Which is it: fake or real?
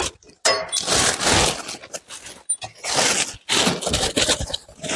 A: real